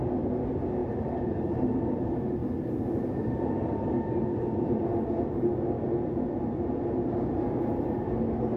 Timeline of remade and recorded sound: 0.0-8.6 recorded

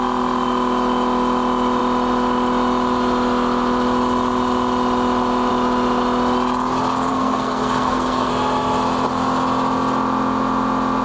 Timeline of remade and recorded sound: 0.0-7.1 recorded; 7.1-8.3 remade; 8.3-11.0 recorded

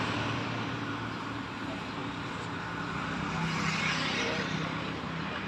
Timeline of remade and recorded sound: 0.0-2.0 remade; 2.0-3.8 recorded; 3.8-5.5 remade

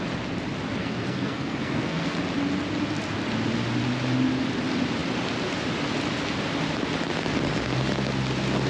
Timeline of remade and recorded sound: 0.0-0.8 recorded; 0.8-2.2 remade; 2.2-8.7 recorded

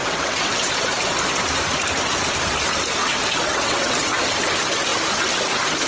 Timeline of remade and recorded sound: 0.0-0.7 remade; 0.7-3.0 recorded; 3.0-4.2 remade; 4.2-5.9 recorded

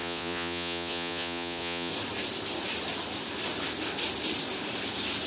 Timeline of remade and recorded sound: 0.0-1.9 remade; 1.9-5.3 recorded